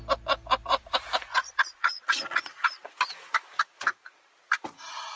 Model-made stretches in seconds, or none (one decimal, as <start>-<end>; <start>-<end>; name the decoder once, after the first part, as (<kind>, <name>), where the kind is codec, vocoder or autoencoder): 1.3-2.9 (vocoder, Vocos)